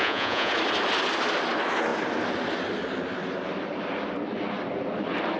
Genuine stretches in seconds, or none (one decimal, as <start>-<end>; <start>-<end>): 0.5-5.4